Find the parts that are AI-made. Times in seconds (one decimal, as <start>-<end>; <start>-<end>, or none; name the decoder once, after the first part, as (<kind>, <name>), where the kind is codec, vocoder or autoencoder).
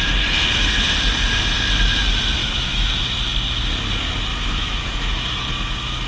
2.4-3.0 (autoencoder, DAC-VAE); 4.3-5.4